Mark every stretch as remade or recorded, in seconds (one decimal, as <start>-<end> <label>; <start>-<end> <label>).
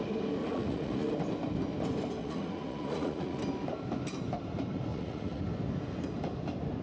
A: 0.0-0.4 recorded; 0.4-1.1 remade; 1.1-2.2 recorded; 2.2-3.4 remade; 3.4-4.9 recorded; 4.9-5.4 remade; 5.4-6.8 recorded